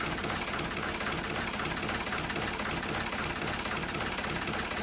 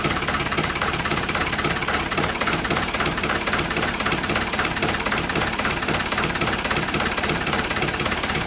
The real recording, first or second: first